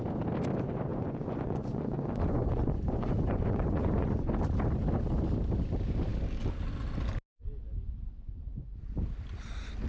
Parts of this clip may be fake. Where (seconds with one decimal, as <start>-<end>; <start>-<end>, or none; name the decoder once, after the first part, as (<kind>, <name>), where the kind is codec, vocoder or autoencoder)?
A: 0.9-4.3 (vocoder, Vocos)